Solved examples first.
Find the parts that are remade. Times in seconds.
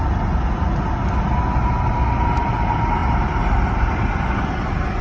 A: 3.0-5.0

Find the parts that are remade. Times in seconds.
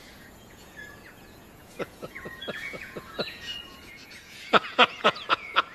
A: 0.0-5.7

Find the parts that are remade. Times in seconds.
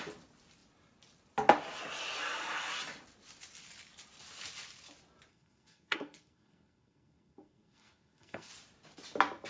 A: 5.3-8.5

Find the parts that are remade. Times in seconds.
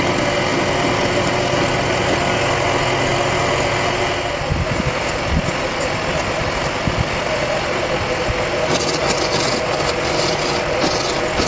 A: none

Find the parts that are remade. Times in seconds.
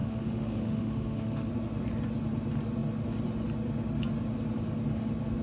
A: 0.0-1.5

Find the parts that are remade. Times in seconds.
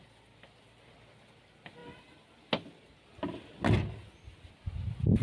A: none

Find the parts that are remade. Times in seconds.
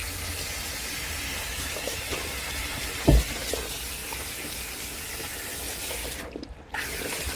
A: 0.8-4.0; 4.7-7.4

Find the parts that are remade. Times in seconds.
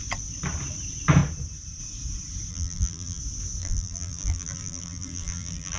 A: 2.5-3.2; 3.6-5.8